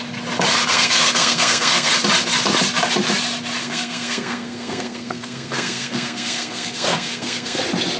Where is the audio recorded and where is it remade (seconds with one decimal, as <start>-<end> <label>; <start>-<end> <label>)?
0.0-0.7 recorded; 0.7-1.9 remade; 1.9-3.6 recorded; 3.6-7.6 remade; 7.6-8.0 recorded